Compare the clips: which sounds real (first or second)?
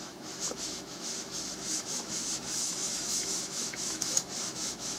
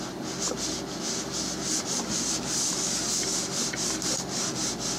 second